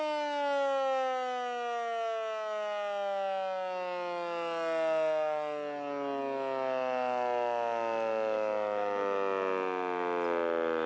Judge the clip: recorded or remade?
recorded